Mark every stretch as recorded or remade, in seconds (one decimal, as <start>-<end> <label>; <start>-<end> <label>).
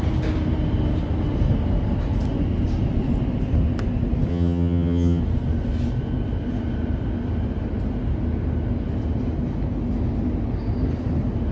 0.0-4.3 recorded; 4.3-5.2 remade; 5.2-11.5 recorded